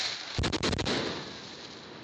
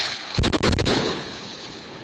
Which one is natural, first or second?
first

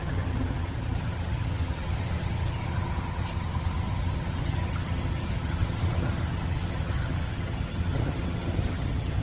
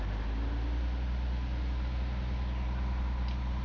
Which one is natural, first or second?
second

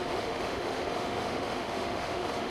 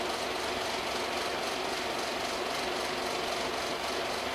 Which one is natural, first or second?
second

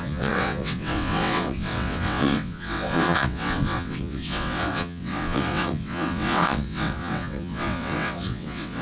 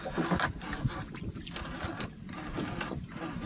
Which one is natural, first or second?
second